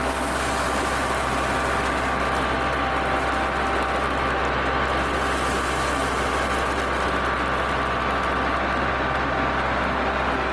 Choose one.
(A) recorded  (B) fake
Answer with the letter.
A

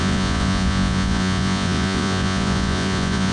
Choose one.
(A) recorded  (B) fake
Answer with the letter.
B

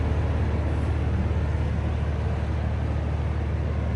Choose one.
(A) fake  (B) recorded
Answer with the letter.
B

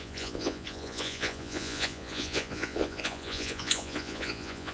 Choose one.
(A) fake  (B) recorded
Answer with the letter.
A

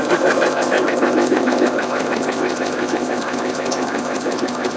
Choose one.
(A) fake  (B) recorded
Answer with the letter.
A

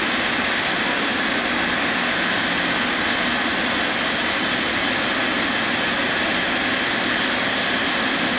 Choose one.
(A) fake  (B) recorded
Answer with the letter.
B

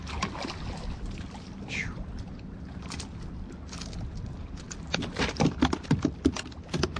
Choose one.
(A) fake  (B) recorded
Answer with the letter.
B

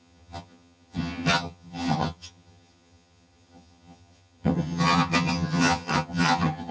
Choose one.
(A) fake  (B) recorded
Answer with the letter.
A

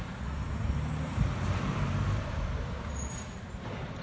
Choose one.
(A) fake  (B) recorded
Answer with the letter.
A